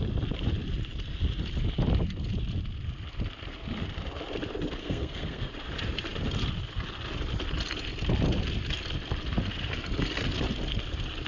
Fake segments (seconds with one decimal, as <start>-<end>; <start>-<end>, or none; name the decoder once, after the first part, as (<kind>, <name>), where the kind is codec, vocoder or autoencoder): 4.8-5.5 (codec, SNAC)